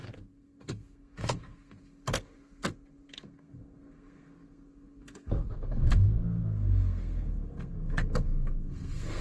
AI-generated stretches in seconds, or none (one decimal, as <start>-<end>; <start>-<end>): 0.0-9.2